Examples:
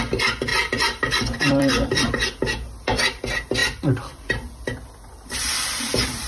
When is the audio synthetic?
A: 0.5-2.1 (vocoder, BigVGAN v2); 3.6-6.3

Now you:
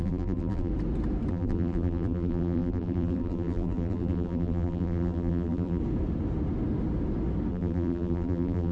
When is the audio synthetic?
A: 0.0-0.7 (vocoder, BigVGAN v2); 1.3-5.8; 7.5-8.7

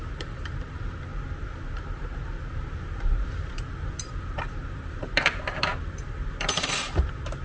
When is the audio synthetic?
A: 0.0-1.1 (vocoder, BigVGAN v2); 2.6-7.4

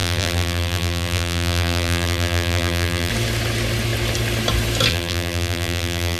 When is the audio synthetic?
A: 0.0-3.1 (vocoder, BigVGAN v2); 4.9-6.2

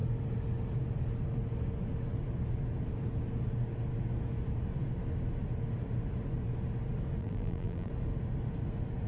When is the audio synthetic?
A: 7.2-7.9 (vocoder, BigVGAN v2)